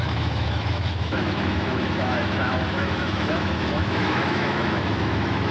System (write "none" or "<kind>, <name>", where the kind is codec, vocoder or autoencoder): autoencoder, DAC-VAE